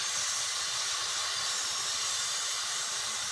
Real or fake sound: real